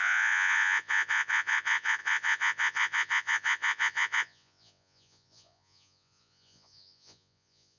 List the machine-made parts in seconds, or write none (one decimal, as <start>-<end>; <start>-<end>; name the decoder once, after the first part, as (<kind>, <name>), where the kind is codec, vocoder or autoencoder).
0.0-7.8 (vocoder, Vocos)